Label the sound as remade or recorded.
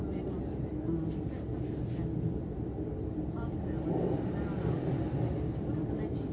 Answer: recorded